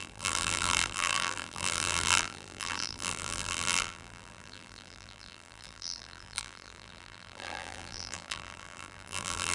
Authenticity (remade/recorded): remade